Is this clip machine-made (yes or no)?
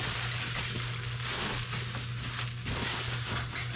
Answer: no